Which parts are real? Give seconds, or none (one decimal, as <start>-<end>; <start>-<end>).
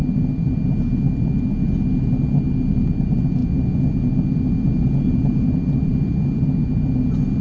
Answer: 0.0-7.4